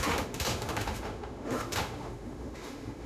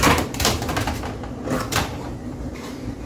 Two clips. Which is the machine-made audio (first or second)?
first